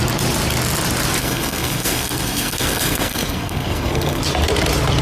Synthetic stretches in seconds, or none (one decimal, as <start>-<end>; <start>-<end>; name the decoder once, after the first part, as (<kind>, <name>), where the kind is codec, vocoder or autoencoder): 1.2-4.2 (codec, SNAC)